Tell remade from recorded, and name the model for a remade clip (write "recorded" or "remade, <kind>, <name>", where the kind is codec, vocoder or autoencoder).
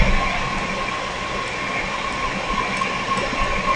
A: recorded